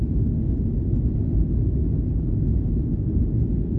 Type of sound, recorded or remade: recorded